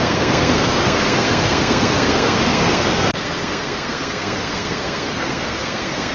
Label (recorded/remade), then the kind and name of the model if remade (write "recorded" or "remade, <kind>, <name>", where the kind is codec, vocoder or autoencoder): remade, codec, SNAC